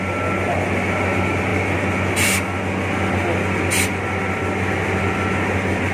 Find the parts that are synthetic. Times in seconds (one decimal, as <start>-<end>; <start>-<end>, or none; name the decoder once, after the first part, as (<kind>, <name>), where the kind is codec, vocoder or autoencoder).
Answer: none